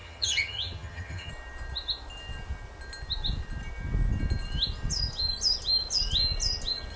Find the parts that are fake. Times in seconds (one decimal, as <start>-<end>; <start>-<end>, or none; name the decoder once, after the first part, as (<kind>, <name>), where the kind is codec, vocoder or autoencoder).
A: 0.0-1.3 (vocoder, HiFi-GAN)